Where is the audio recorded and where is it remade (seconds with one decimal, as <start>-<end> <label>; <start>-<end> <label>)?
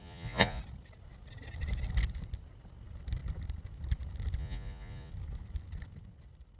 0.0-0.6 remade; 0.6-4.4 recorded; 4.4-5.1 remade; 5.1-6.6 recorded